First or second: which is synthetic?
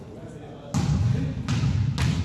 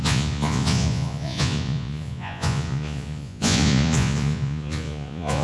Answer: second